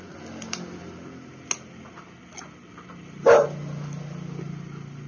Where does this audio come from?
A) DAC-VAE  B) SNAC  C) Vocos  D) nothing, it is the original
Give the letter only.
D